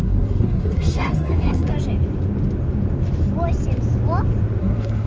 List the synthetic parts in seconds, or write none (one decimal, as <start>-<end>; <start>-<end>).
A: 0.0-1.7; 4.6-5.1